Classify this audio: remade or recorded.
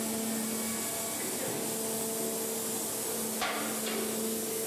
recorded